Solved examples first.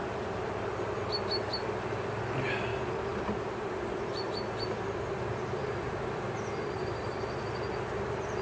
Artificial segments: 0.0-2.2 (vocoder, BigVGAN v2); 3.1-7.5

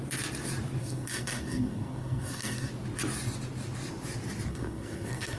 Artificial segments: 0.8-2.7 (codec, SNAC); 4.5-5.4

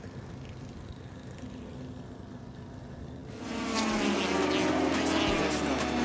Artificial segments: none

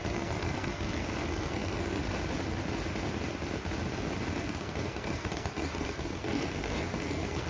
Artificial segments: 0.0-2.0 (codec, SNAC); 4.4-7.5

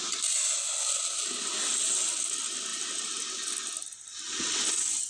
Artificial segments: none

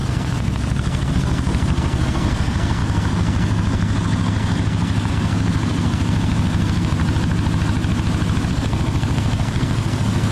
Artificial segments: 0.0-7.0 (codec, SNAC); 8.5-10.3

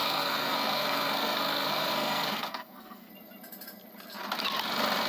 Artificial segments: 0.0-3.1 (codec, SNAC)